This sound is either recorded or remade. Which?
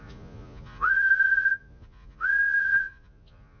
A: remade